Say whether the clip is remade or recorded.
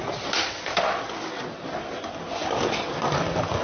recorded